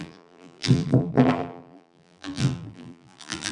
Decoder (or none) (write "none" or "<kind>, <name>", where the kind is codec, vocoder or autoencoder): vocoder, BigVGAN v2